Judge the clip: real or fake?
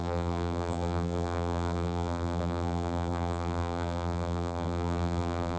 fake